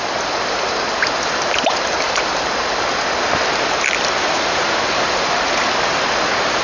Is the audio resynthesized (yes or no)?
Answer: no